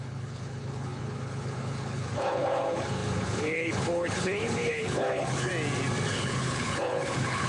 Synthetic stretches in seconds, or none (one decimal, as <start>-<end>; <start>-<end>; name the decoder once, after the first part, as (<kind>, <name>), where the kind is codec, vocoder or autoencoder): 0.0-5.5 (codec, HILCodec); 6.1-7.5